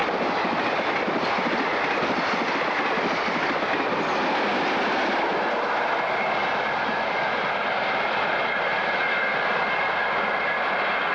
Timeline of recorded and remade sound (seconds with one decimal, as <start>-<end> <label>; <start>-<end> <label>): 0.0-11.1 recorded

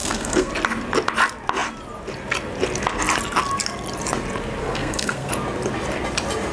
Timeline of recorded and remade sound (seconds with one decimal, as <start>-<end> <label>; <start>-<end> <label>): 0.0-0.5 remade; 0.5-4.6 recorded; 4.6-5.3 remade; 5.3-6.5 recorded